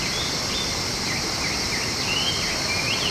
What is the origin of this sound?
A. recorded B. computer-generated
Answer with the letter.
A